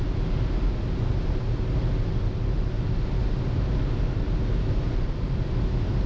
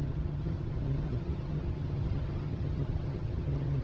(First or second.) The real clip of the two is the first